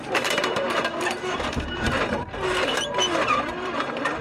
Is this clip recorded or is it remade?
remade